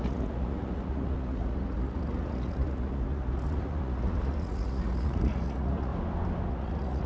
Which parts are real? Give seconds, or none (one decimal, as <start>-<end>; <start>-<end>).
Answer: 5.9-6.5